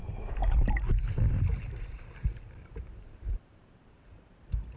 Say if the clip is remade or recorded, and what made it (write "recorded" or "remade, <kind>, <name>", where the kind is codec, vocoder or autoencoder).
remade, vocoder, BigVGAN v2